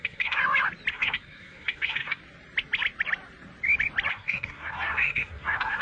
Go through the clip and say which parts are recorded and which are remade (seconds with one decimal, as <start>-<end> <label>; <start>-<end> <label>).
0.0-0.4 remade; 0.4-0.9 recorded; 0.9-2.2 remade; 2.2-4.1 recorded; 4.1-5.8 remade